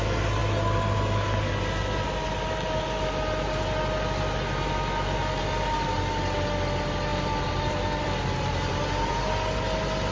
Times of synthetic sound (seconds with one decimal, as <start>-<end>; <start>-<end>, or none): 7.1-9.1